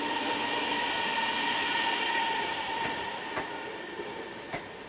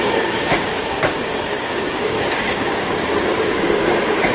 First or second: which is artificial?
second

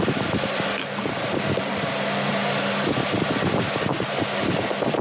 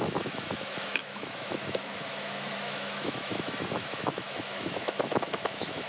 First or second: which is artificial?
second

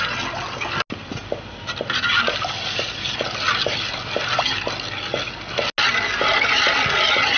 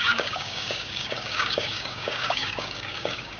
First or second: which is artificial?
second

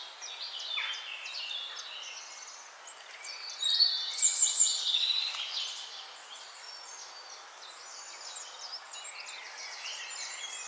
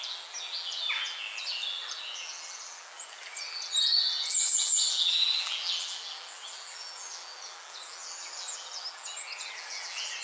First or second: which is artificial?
second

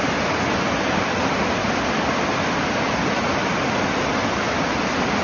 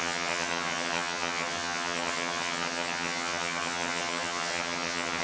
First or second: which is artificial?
second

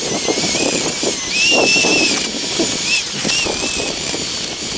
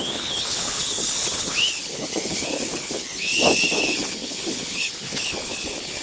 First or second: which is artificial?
second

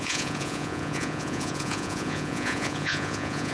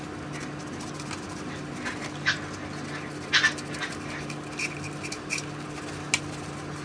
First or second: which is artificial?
first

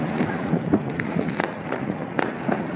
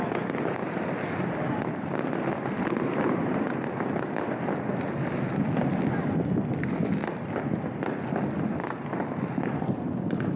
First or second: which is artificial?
first